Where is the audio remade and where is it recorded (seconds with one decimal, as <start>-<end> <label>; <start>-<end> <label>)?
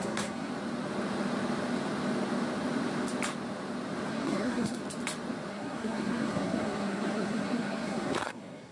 0.0-0.5 remade; 0.5-4.1 recorded; 4.1-4.8 remade; 4.8-5.5 recorded; 5.5-8.7 remade